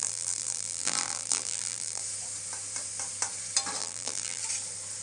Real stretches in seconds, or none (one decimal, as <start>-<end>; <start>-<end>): 2.0-3.8; 4.4-5.0